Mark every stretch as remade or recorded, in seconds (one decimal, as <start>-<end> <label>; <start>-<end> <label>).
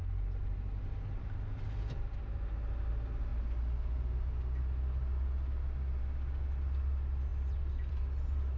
0.0-8.6 recorded